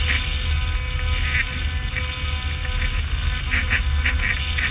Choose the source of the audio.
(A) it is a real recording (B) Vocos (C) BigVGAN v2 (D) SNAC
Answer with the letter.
A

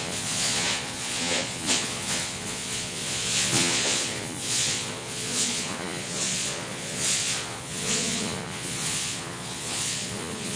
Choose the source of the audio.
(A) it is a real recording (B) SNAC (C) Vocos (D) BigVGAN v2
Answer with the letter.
C